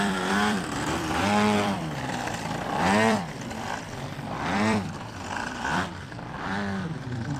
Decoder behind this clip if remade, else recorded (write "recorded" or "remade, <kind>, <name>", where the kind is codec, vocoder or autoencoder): remade, vocoder, BigVGAN v2